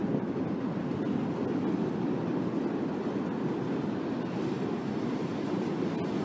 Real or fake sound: real